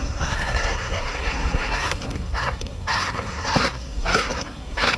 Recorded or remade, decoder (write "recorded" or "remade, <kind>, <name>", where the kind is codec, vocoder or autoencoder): remade, codec, SNAC